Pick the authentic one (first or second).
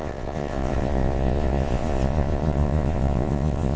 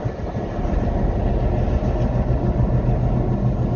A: second